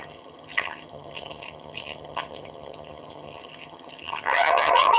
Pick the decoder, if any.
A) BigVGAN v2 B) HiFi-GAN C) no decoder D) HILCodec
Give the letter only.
B